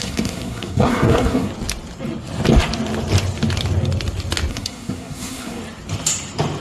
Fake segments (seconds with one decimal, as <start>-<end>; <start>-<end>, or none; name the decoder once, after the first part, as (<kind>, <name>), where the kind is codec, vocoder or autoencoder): 0.0-1.5 (codec, SNAC); 4.5-5.6